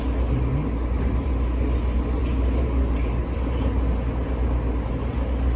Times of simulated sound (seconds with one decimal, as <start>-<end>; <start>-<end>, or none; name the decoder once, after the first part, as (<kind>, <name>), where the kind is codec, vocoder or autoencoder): none